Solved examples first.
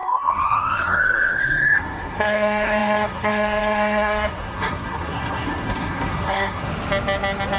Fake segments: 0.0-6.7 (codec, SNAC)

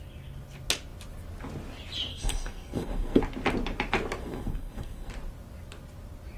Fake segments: 2.1-3.2 (codec, SNAC); 4.2-5.1

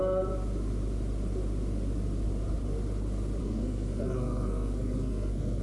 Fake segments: 3.4-5.6 (codec, SNAC)

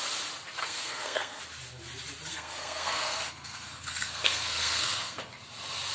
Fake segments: 0.6-1.4 (codec, SNAC); 2.3-5.2

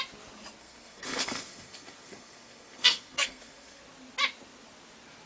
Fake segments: 0.6-3.8 (codec, SNAC)